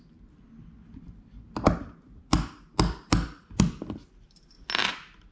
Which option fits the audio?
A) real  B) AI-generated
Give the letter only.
A